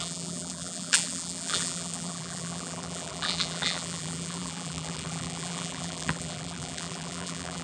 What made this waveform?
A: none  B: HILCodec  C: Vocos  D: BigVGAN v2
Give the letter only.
D